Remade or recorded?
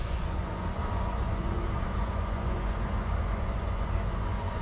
remade